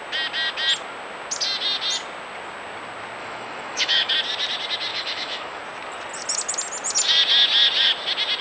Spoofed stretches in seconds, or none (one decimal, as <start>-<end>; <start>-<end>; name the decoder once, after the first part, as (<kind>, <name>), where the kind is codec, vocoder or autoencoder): 3.2-4.1 (autoencoder, DAC-VAE); 4.9-5.6